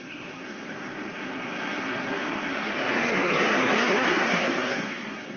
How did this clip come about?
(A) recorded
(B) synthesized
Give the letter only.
B